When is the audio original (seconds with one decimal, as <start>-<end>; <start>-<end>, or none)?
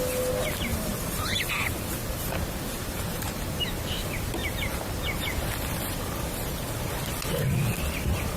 0.0-0.7; 1.5-2.7; 3.6-4.4; 5.0-8.4